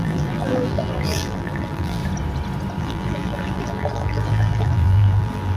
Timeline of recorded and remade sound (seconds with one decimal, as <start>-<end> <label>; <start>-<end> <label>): 0.0-2.0 remade; 2.0-2.8 recorded; 2.8-5.6 remade